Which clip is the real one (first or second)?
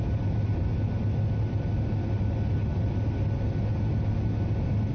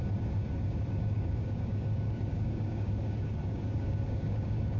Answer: first